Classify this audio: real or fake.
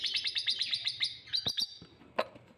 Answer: real